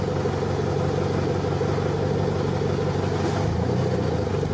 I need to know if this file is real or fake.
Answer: real